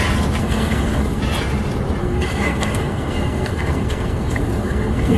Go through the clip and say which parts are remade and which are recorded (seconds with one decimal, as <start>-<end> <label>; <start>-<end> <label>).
0.0-0.4 recorded; 0.4-1.2 remade; 1.2-2.0 recorded; 2.0-5.2 remade